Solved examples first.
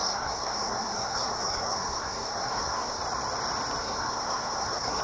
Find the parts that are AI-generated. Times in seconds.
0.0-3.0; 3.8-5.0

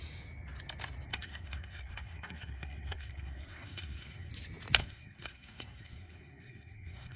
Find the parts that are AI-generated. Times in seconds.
1.1-4.3; 4.8-7.2

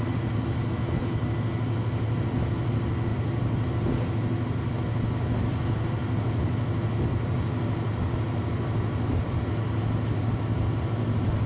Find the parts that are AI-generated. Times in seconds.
none

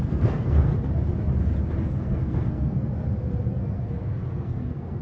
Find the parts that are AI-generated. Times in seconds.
0.0-0.7; 1.8-2.9; 3.5-5.0

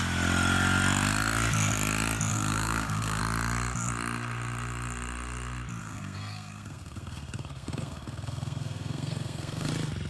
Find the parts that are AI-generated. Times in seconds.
2.3-3.2; 5.8-9.7

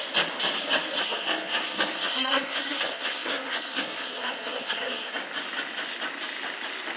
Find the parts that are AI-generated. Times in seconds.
1.0-5.1